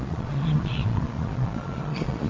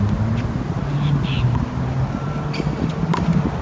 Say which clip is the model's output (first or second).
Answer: first